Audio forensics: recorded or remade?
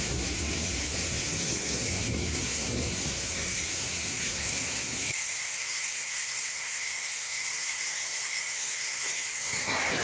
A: remade